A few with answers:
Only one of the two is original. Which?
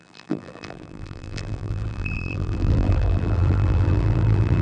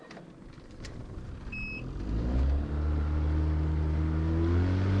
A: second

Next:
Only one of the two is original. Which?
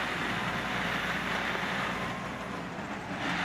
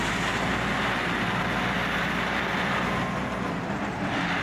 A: second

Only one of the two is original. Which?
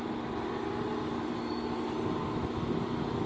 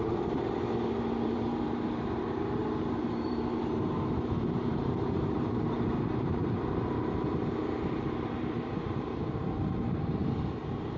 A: first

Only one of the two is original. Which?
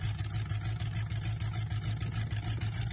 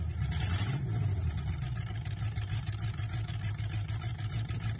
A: first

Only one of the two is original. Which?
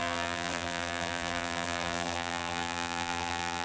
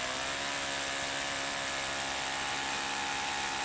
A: second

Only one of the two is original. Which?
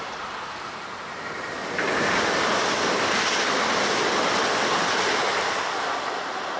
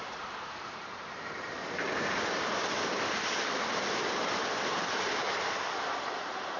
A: first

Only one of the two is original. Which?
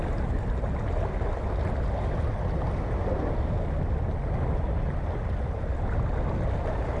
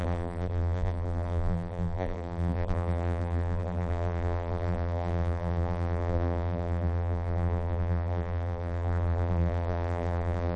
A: first